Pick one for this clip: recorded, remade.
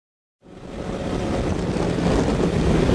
recorded